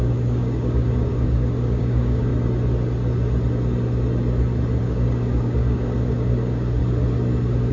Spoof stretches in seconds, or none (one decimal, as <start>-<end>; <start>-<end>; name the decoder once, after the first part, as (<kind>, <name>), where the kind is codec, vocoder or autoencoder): 0.0-2.3 (codec, DAC); 4.8-6.8